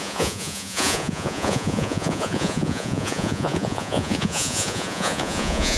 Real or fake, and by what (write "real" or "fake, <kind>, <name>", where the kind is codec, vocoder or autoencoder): fake, vocoder, Vocos